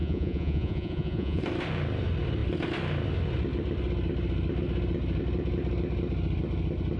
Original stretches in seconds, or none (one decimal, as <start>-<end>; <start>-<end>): 1.4-7.0